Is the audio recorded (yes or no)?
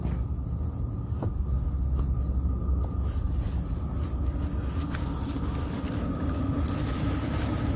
yes